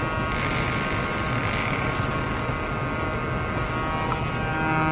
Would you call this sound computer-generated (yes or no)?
no